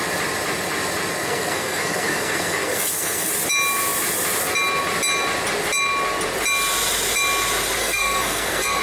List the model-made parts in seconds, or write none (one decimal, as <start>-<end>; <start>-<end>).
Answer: 1.2-3.3; 7.8-8.8